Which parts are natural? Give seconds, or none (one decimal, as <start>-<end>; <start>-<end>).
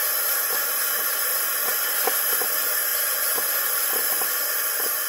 0.0-2.9; 3.6-5.1